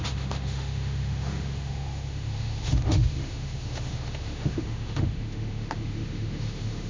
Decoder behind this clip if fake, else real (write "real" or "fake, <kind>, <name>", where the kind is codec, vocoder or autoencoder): fake, autoencoder, DAC-VAE